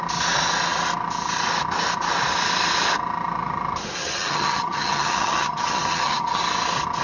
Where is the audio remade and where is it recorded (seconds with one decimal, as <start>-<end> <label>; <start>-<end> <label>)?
0.0-4.0 recorded; 4.0-6.4 remade; 6.4-7.0 recorded